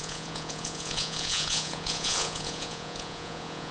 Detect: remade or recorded remade